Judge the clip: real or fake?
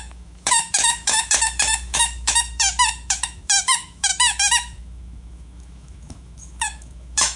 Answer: fake